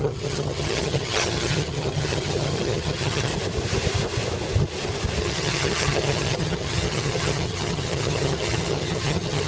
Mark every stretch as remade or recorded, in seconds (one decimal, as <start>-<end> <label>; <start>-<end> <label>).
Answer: 0.0-3.3 remade; 3.3-5.2 recorded; 5.2-9.5 remade